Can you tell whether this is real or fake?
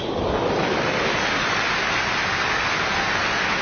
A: real